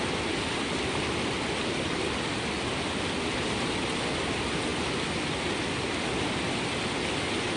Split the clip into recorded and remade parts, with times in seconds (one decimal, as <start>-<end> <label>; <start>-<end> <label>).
0.0-7.6 recorded